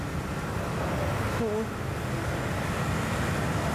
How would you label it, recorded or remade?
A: recorded